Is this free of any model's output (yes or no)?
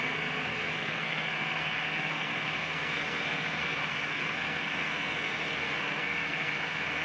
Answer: no